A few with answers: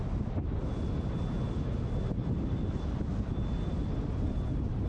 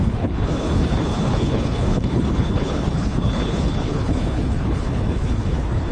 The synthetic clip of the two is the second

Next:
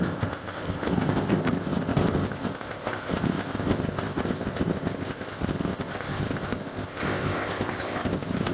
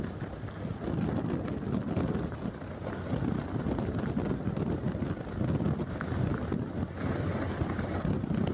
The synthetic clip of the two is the first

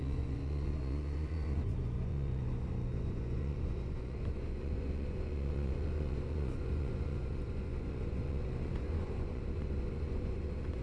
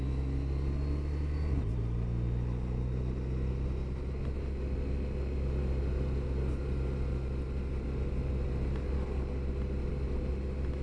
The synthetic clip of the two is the first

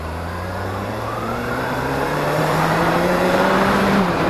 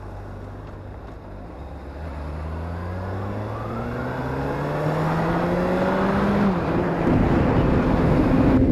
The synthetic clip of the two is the first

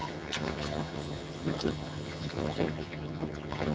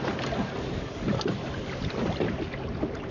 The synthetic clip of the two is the first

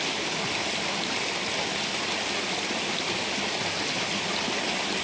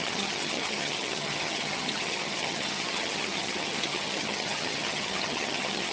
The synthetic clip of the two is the second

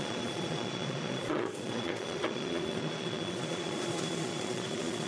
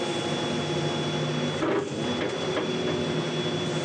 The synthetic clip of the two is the first